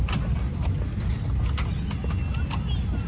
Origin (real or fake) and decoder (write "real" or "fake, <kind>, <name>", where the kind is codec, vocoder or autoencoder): real